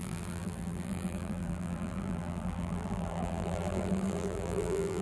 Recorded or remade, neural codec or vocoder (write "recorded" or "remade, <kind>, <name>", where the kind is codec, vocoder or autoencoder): remade, vocoder, BigVGAN v2